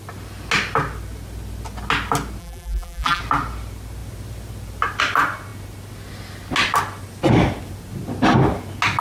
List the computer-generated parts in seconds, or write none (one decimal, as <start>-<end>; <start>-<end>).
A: 2.4-3.2